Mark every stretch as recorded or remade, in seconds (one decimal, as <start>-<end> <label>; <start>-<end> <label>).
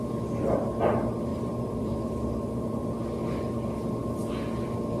0.0-1.3 recorded; 1.3-3.0 remade; 3.0-5.0 recorded